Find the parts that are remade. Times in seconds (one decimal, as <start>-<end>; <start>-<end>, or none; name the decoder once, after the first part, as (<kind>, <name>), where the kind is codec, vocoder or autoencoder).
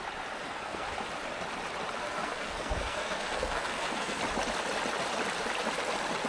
0.4-0.9 (codec, SNAC); 2.0-4.2